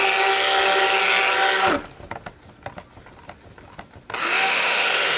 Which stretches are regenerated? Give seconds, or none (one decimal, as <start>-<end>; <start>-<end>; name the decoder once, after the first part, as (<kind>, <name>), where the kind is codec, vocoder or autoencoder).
4.2-5.2 (autoencoder, DAC-VAE)